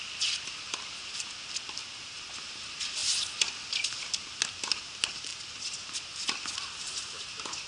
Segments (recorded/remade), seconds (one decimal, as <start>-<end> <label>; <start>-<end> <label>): 0.0-7.7 recorded